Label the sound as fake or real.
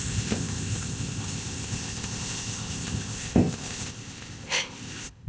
fake